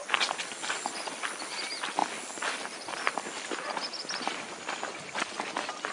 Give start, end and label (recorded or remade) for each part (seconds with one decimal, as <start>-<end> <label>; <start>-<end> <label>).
0.0-3.8 recorded; 3.8-4.9 remade; 4.9-5.9 recorded